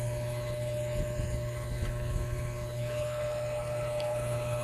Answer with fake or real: fake